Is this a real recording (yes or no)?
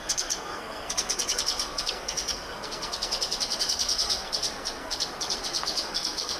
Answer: no